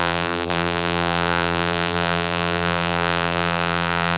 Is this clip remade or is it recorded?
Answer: remade